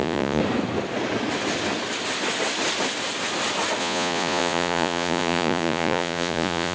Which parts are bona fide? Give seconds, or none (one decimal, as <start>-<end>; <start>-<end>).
0.4-3.8